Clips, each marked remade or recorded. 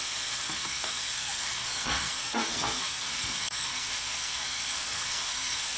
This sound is remade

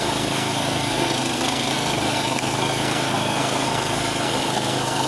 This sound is remade